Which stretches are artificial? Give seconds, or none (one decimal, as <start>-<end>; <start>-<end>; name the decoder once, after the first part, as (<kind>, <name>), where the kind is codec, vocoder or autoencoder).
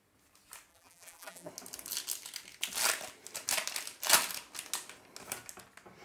0.7-1.5 (vocoder, BigVGAN v2)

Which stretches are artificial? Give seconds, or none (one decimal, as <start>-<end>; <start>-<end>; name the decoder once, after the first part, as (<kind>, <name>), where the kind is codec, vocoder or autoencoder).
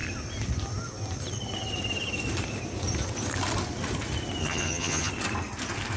4.4-5.1 (vocoder, HiFi-GAN)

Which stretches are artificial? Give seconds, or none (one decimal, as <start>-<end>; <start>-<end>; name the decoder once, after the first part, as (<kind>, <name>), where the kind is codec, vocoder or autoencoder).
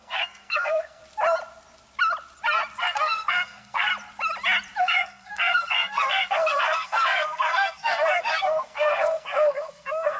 0.0-1.0 (codec, SNAC); 2.8-3.9; 4.8-10.2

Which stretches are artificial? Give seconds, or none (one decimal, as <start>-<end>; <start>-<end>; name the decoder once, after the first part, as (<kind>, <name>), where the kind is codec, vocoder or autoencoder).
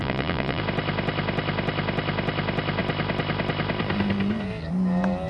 0.0-0.6 (vocoder, Vocos)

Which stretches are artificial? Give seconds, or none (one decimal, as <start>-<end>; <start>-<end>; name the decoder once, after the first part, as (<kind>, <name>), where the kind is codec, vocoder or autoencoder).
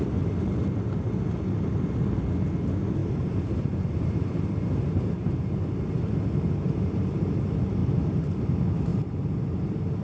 3.0-7.3 (vocoder, BigVGAN v2); 7.8-8.4; 8.9-9.6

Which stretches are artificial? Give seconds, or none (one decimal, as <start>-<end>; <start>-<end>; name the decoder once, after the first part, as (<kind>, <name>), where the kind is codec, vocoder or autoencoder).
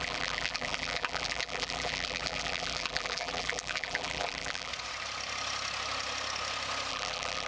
0.0-4.7 (vocoder, BigVGAN v2); 6.9-7.5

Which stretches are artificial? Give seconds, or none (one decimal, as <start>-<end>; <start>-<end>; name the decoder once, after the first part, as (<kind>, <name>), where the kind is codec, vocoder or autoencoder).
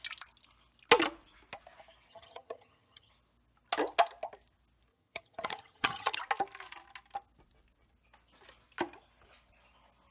2.1-3.1 (vocoder, HiFi-GAN); 4.9-6.2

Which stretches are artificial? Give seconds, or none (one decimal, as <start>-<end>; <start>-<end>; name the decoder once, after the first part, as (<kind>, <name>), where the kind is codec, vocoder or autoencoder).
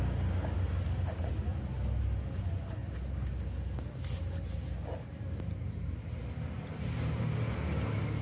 none